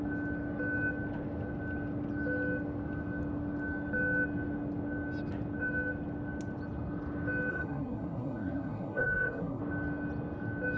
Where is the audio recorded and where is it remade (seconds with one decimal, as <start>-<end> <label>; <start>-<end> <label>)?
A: 0.0-7.5 recorded; 7.5-9.6 remade; 9.6-10.8 recorded